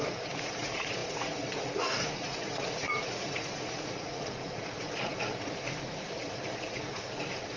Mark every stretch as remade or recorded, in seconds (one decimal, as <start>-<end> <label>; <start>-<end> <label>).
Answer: 0.0-7.6 remade